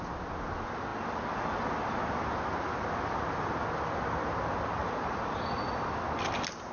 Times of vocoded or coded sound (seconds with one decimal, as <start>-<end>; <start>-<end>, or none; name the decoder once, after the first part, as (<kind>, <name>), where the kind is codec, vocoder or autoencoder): 4.8-5.8 (vocoder, Vocos)